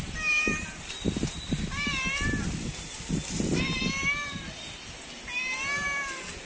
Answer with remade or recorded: recorded